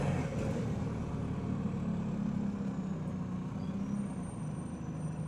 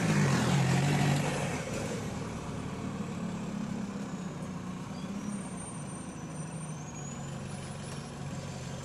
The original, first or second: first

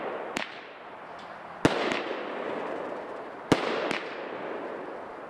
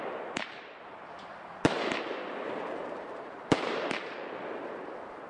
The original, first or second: first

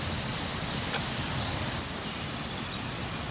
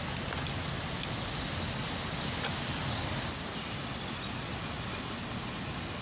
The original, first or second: second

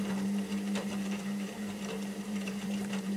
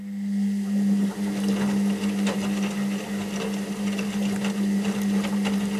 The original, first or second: second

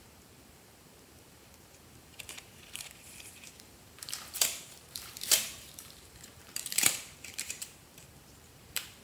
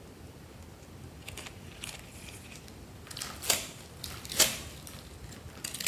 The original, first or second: second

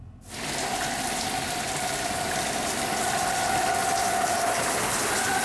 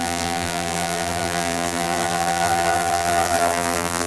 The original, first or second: first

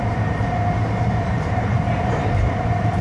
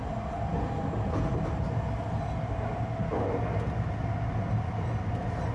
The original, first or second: second